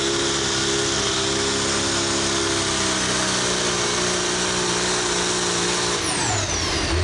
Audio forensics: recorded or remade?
recorded